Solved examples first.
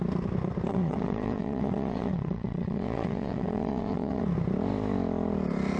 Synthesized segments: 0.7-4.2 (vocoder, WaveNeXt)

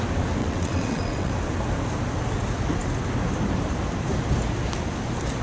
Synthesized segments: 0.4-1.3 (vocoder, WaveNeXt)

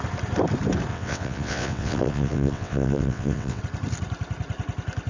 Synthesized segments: 0.9-3.6 (vocoder, WaveNeXt)

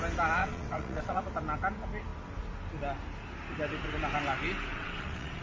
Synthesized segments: 0.4-1.2 (vocoder, WaveNeXt); 4.7-5.4